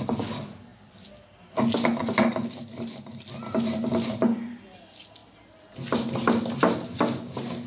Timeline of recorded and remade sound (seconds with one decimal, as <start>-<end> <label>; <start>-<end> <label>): 0.0-7.7 recorded